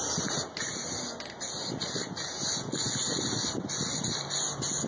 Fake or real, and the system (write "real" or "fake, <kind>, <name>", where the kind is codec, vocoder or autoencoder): real